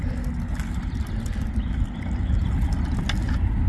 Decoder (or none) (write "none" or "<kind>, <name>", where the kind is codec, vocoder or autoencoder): none